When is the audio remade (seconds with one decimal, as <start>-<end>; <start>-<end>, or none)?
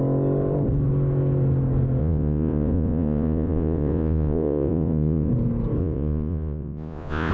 2.0-5.3; 5.8-7.3